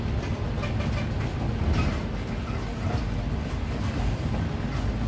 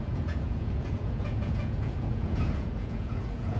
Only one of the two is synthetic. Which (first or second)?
second